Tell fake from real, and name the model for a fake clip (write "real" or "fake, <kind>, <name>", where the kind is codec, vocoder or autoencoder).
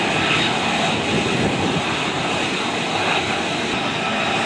real